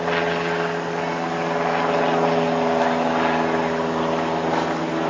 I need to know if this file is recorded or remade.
recorded